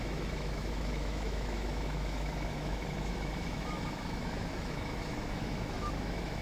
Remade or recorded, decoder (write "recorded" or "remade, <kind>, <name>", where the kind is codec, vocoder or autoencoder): remade, autoencoder, DAC-VAE